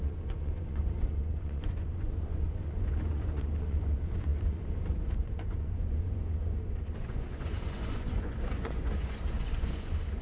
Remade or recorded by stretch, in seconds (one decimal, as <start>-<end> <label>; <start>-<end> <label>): 0.0-10.2 remade